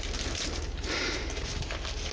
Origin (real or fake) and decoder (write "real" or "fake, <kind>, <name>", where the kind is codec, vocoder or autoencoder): real